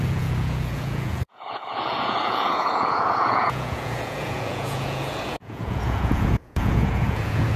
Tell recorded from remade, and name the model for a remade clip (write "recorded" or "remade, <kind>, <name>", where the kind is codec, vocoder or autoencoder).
remade, vocoder, Vocos